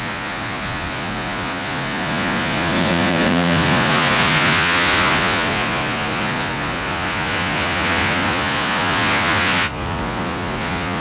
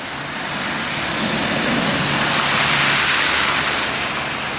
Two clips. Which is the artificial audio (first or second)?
first